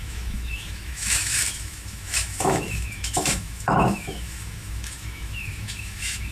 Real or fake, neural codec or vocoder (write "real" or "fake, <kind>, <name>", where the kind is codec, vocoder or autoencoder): fake, autoencoder, DAC-VAE